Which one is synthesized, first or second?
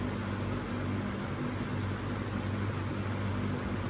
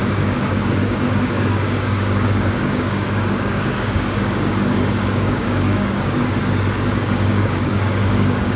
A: second